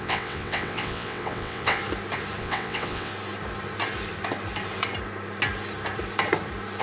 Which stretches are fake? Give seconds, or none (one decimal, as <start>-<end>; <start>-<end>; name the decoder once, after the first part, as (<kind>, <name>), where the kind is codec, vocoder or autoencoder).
0.0-1.8 (vocoder, WaveNeXt); 2.4-3.1